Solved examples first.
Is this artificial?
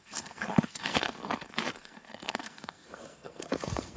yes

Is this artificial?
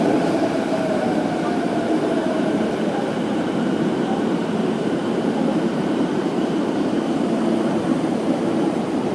yes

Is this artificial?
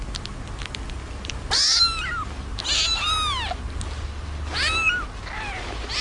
no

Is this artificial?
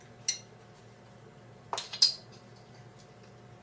no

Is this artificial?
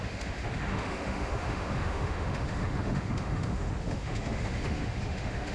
yes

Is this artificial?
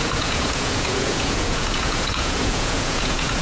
yes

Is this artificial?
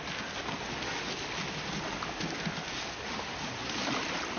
no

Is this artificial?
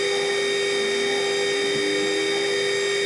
no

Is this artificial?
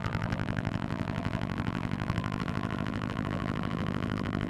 yes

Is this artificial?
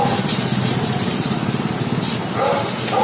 no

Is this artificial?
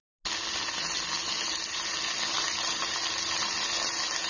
no